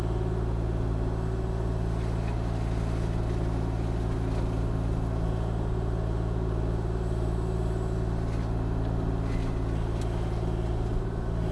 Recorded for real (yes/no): yes